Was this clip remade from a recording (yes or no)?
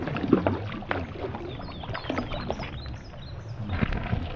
no